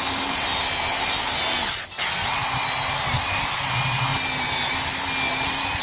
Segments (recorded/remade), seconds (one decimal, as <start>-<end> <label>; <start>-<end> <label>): 0.0-5.8 recorded